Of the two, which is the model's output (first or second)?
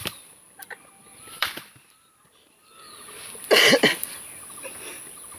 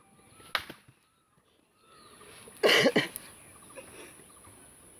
first